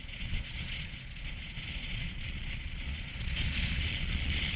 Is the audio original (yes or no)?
no